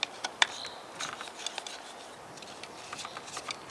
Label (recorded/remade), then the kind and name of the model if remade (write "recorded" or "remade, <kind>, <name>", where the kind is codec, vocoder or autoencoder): recorded